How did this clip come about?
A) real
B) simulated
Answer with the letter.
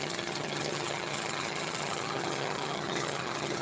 B